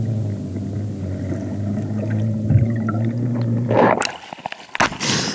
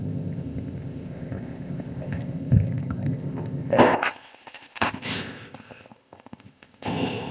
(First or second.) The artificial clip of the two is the second